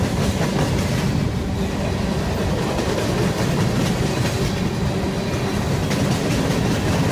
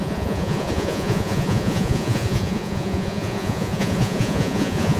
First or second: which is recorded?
first